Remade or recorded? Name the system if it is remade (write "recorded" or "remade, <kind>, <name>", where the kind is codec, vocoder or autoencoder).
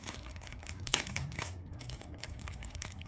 remade, codec, SNAC